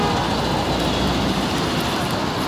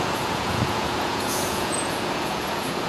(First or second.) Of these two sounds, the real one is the first